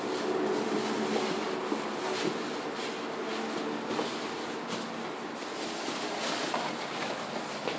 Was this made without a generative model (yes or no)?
yes